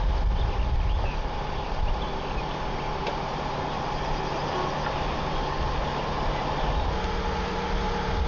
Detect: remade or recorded recorded